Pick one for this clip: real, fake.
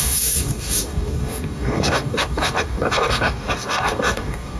fake